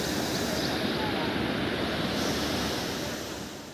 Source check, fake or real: real